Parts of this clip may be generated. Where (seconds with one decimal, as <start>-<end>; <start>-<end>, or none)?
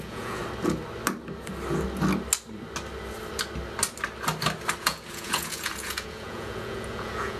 0.0-0.4; 4.8-7.4